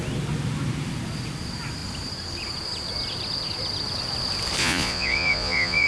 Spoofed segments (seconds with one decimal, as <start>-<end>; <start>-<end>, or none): 4.6-5.9